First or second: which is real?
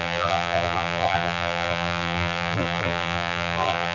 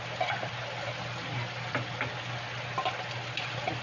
second